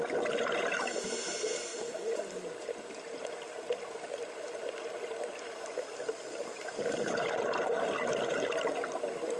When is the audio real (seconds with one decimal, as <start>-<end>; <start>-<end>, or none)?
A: 0.0-1.7; 3.5-6.5; 8.7-9.4